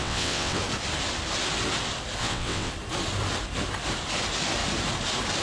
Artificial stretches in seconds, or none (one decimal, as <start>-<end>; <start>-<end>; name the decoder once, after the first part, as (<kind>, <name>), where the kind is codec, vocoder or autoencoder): 0.0-0.6 (vocoder, WaveNeXt); 2.2-2.7